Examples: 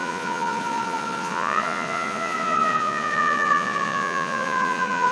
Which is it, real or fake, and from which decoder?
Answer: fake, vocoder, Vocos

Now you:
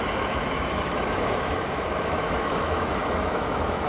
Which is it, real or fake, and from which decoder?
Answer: fake, autoencoder, DAC-VAE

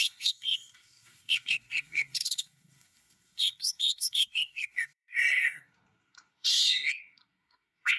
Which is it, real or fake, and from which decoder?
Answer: fake, codec, SNAC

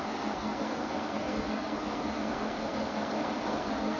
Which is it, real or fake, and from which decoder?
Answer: fake, codec, SNAC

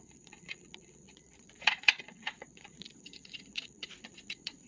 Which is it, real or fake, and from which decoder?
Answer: fake, vocoder, Vocos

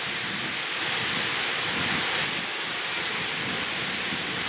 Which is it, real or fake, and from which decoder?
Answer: real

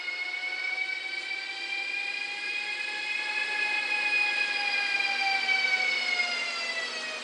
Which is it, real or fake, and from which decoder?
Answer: real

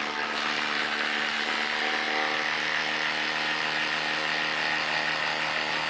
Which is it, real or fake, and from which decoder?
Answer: real